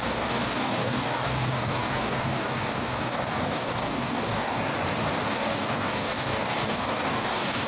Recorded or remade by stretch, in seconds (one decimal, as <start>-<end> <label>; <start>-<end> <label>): 0.0-4.7 remade; 4.7-5.3 recorded; 5.3-7.7 remade